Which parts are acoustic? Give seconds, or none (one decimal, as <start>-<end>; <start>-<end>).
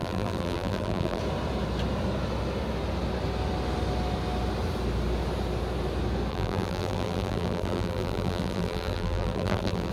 1.2-6.3